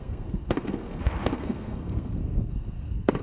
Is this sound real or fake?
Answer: fake